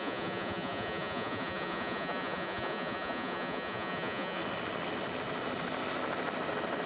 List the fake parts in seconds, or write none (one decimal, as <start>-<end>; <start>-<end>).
0.0-4.4

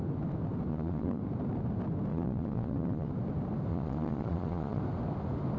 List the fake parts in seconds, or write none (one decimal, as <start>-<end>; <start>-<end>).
0.7-1.2; 2.1-3.1; 3.7-4.8

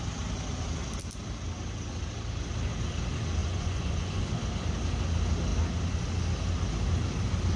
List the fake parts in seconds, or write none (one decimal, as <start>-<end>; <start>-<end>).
3.4-4.2

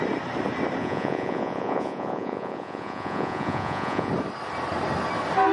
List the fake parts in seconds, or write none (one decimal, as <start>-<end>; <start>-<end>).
0.8-4.1

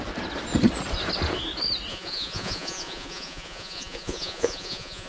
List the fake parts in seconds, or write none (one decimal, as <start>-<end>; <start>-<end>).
1.9-5.1

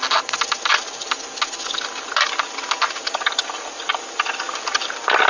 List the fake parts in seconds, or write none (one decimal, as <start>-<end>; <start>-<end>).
none

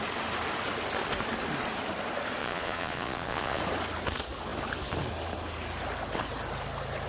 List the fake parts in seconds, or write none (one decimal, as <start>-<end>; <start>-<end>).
2.4-3.6